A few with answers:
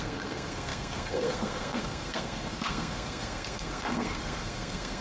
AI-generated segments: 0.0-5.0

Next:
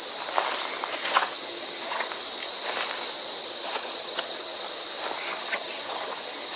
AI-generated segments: 0.9-2.1; 3.4-4.6; 5.2-6.6

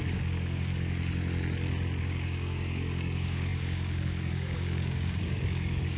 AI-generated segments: 0.0-0.7; 2.0-6.0